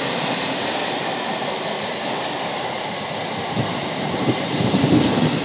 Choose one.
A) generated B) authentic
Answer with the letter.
B